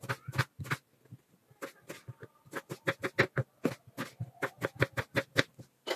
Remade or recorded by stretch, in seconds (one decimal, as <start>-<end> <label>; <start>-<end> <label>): 0.0-6.0 recorded